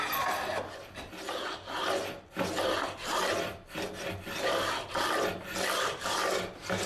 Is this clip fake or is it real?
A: real